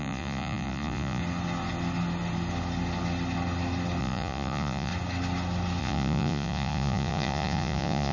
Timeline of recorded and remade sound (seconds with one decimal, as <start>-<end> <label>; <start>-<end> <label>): 0.0-1.2 remade; 1.2-4.0 recorded; 4.0-4.9 remade; 4.9-5.8 recorded; 5.8-8.1 remade